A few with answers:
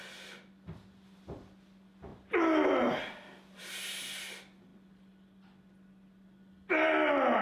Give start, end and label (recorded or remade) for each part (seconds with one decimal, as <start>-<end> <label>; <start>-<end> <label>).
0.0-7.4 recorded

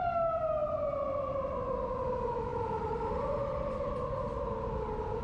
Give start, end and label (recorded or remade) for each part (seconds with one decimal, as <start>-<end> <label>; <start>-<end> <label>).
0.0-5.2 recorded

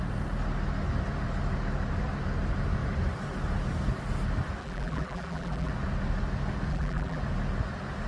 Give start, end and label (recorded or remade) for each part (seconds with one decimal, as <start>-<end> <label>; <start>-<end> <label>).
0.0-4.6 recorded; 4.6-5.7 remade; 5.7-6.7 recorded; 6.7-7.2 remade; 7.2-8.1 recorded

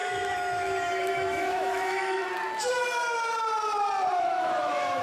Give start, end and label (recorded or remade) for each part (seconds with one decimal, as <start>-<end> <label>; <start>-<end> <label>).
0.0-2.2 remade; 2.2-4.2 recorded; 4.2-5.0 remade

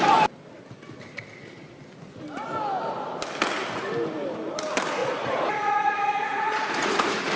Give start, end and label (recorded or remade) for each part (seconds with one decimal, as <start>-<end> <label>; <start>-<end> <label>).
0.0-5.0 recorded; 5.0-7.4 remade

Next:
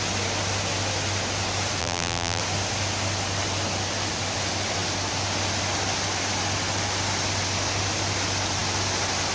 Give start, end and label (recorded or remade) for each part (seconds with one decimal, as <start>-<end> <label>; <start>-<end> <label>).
0.0-1.8 recorded; 1.8-2.4 remade; 2.4-9.3 recorded